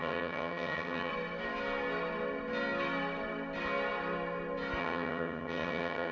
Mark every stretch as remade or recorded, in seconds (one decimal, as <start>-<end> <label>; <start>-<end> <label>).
0.0-1.1 remade; 1.1-4.8 recorded; 4.8-6.1 remade